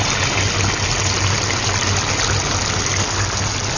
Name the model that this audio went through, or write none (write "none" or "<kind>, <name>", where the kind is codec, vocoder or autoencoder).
none